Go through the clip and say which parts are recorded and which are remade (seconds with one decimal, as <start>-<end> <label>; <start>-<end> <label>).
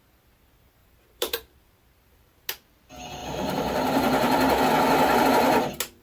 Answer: 0.0-0.8 recorded; 0.8-1.7 remade; 1.7-3.2 recorded; 3.2-4.6 remade; 4.6-6.0 recorded